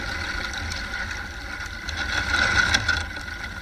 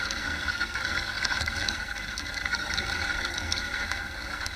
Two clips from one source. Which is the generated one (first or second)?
second